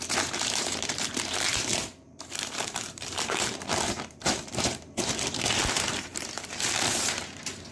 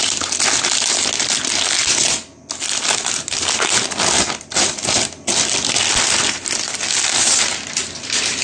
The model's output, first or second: first